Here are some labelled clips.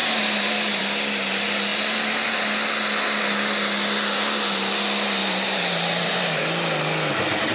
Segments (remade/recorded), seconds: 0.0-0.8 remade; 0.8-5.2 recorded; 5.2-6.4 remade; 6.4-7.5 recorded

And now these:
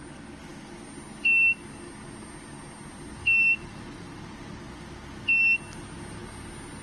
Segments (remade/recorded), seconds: 0.0-6.8 recorded

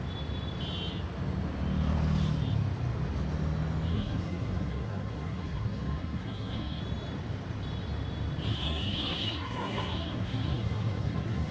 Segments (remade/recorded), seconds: 0.0-3.9 recorded; 3.9-6.8 remade; 6.8-8.5 recorded; 8.5-11.5 remade

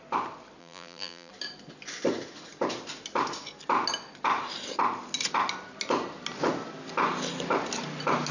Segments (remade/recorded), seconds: 0.0-0.6 recorded; 0.6-1.3 remade; 1.3-8.3 recorded

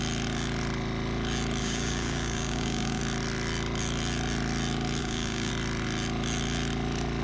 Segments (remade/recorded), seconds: 0.0-1.6 recorded; 1.6-3.0 remade; 3.0-5.0 recorded; 5.0-5.5 remade; 5.5-7.2 recorded

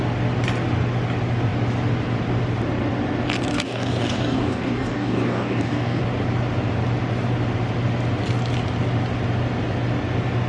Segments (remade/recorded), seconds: 0.0-3.5 recorded; 3.5-6.0 remade; 6.0-10.5 recorded

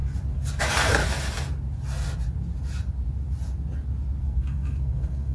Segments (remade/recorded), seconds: 0.0-0.6 recorded; 0.6-1.0 remade; 1.0-4.2 recorded; 4.2-5.3 remade

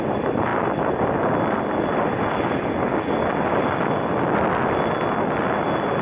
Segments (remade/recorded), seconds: 0.0-6.0 recorded